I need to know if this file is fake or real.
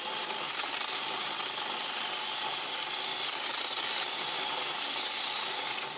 real